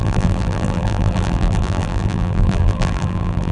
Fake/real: fake